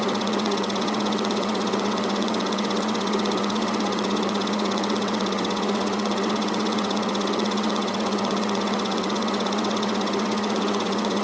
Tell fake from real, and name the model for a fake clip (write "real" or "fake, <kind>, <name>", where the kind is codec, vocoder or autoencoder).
fake, vocoder, WaveNeXt